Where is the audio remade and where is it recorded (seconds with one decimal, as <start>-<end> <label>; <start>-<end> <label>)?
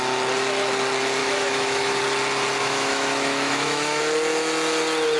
0.0-1.2 recorded; 1.2-2.0 remade; 2.0-2.6 recorded; 2.6-4.0 remade; 4.0-5.2 recorded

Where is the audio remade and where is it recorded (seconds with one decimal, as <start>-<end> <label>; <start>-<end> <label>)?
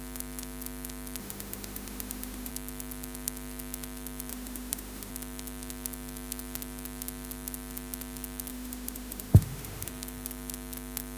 0.0-1.2 recorded; 1.2-2.5 remade; 2.5-4.3 recorded; 4.3-5.1 remade; 5.1-8.5 recorded; 8.5-9.9 remade; 9.9-11.2 recorded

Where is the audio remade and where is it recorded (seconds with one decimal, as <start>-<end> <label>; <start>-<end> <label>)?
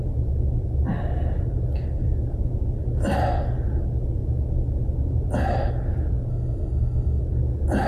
0.0-6.3 recorded; 6.3-7.2 remade; 7.2-7.9 recorded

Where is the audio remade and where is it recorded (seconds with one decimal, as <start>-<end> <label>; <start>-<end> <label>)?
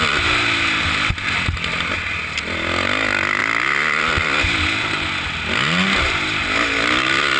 0.0-7.4 recorded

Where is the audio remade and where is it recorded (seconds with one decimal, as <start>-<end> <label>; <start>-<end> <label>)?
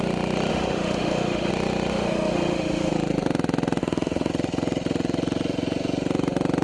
0.0-0.5 recorded; 0.5-1.5 remade; 1.5-1.9 recorded; 1.9-2.9 remade; 2.9-3.8 recorded; 3.8-4.3 remade; 4.3-6.6 recorded